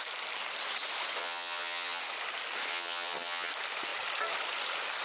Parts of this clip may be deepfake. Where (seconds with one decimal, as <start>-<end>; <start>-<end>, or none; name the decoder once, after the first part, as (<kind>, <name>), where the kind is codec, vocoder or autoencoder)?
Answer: 1.2-2.0 (vocoder, HiFi-GAN); 2.7-3.5